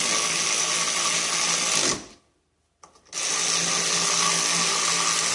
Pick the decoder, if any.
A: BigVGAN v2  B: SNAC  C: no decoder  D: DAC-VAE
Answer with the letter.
C